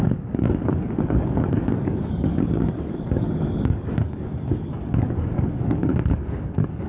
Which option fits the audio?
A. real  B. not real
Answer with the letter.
B